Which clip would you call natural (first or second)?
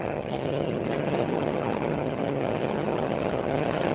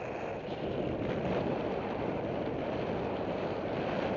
second